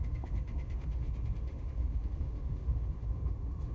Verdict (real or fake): fake